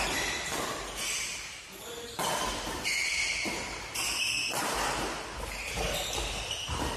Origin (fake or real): real